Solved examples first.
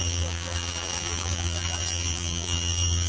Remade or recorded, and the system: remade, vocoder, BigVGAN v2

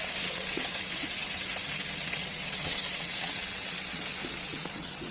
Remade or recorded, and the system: remade, vocoder, WaveNeXt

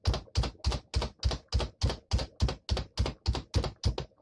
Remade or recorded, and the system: recorded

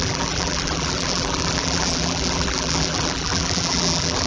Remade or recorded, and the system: remade, vocoder, BigVGAN v2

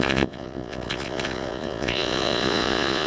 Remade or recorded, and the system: remade, vocoder, Vocos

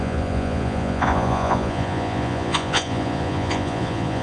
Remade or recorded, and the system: remade, vocoder, Vocos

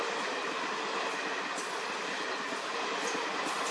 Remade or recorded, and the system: recorded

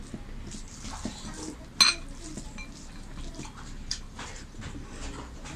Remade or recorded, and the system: recorded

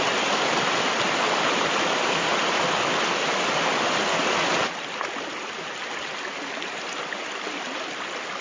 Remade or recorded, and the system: recorded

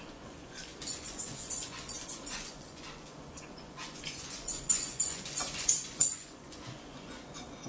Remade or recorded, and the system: remade, vocoder, Vocos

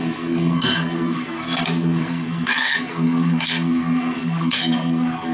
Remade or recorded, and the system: remade, codec, SNAC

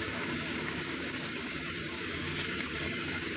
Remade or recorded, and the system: remade, codec, DAC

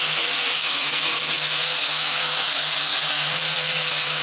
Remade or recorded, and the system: remade, codec, SNAC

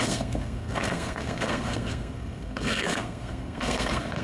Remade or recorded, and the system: remade, codec, SNAC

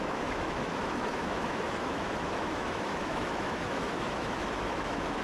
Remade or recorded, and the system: remade, autoencoder, DAC-VAE